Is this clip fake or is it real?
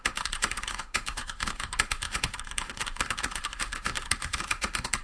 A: fake